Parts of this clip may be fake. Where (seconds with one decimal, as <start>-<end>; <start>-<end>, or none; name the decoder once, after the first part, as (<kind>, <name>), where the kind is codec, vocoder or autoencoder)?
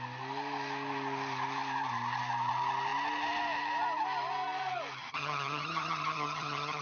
5.0-6.8 (vocoder, HiFi-GAN)